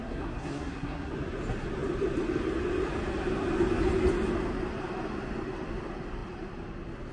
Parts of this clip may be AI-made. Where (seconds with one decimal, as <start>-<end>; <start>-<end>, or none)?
0.0-1.1